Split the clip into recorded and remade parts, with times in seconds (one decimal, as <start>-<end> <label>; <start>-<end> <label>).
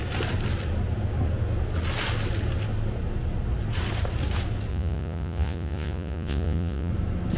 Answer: 0.0-4.7 recorded; 4.7-6.9 remade; 6.9-7.4 recorded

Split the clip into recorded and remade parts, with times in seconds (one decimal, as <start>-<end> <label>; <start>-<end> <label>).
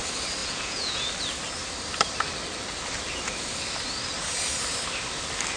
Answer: 0.0-0.4 recorded; 0.4-1.1 remade; 1.1-5.6 recorded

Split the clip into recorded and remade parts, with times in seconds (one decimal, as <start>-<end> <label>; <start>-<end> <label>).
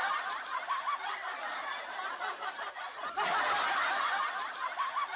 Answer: 0.0-5.2 recorded